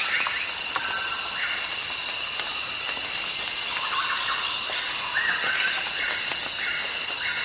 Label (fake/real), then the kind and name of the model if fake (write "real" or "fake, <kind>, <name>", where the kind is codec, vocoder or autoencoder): real